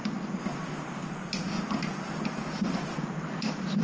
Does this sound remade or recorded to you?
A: recorded